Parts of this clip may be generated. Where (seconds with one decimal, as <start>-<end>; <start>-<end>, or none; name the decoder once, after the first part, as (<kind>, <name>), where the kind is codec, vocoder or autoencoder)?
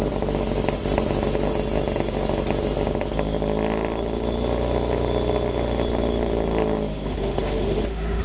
6.9-8.2 (autoencoder, DAC-VAE)